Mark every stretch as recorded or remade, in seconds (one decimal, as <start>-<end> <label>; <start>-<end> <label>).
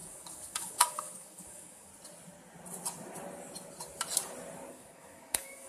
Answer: 0.0-1.9 remade; 1.9-4.7 recorded; 4.7-5.7 remade